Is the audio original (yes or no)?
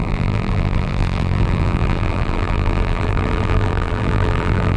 no